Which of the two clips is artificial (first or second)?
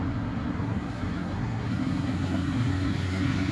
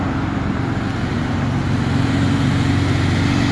first